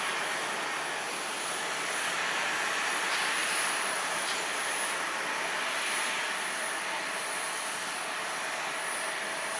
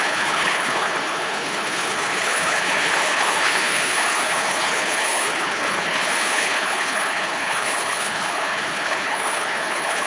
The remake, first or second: second